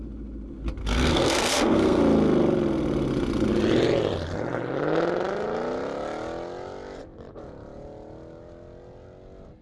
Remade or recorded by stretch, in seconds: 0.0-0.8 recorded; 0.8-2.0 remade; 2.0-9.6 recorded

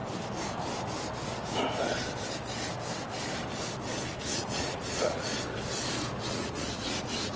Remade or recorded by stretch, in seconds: 0.0-4.2 recorded; 4.2-5.3 remade; 5.3-6.3 recorded; 6.3-7.4 remade

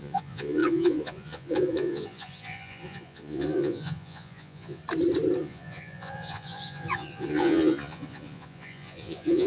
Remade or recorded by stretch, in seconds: 0.0-4.8 remade; 4.8-5.4 recorded; 5.4-9.5 remade

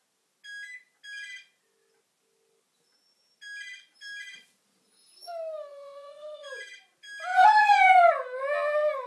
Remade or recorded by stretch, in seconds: 0.0-5.7 recorded; 5.7-6.5 remade; 6.5-7.3 recorded; 7.3-8.1 remade; 8.1-9.1 recorded

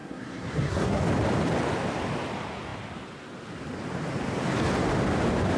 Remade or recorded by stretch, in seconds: 0.0-1.0 remade; 1.0-5.6 recorded

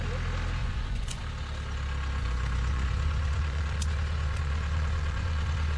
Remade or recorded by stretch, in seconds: 0.0-0.6 recorded; 0.6-1.2 remade; 1.2-2.2 recorded; 2.2-5.8 remade